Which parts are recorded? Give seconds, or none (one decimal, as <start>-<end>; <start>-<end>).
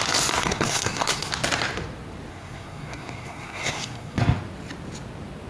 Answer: 0.0-0.4; 1.3-2.3; 4.2-5.5